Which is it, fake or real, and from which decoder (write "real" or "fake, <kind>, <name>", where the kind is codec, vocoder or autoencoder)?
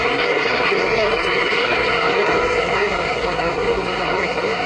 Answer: fake, codec, SNAC